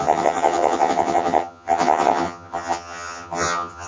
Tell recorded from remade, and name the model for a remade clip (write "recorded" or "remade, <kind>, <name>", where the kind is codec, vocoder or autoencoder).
remade, vocoder, HiFi-GAN